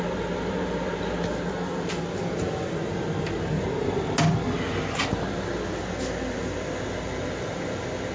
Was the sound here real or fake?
real